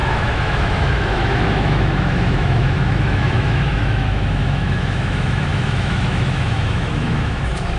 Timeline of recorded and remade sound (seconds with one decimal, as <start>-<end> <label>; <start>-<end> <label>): 0.0-7.8 remade